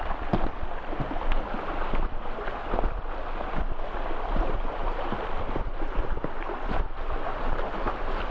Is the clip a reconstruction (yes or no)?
no